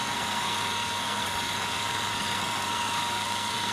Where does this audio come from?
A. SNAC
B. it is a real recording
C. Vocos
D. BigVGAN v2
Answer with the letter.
A